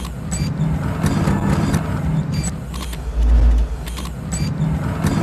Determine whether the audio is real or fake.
real